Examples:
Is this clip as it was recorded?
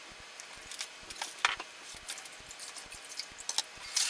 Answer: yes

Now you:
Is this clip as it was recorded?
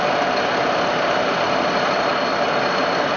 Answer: yes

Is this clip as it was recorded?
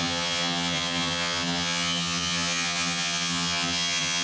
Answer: no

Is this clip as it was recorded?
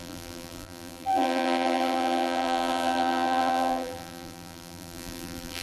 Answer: no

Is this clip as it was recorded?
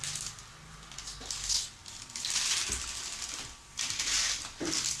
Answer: yes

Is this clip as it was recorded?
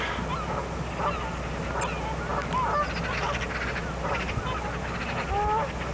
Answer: yes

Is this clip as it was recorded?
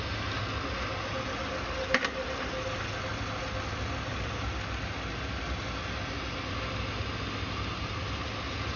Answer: yes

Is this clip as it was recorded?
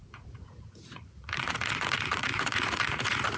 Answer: no